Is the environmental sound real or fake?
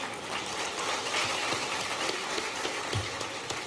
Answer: real